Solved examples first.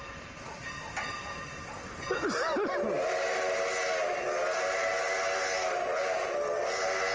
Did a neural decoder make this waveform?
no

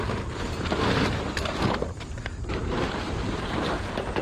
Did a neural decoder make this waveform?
yes